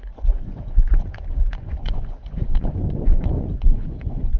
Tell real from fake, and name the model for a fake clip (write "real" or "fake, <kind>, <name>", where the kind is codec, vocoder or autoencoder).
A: fake, vocoder, Vocos